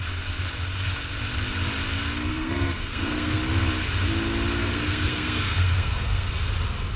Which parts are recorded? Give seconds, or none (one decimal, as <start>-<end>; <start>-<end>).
0.0-2.3; 3.4-4.6; 6.4-7.0